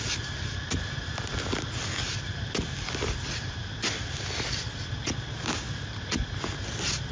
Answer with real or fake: real